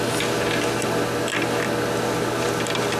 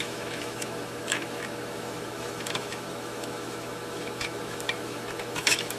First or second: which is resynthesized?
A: second